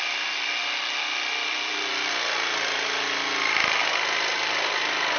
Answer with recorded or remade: recorded